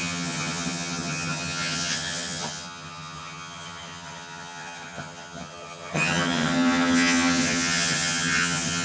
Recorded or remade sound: remade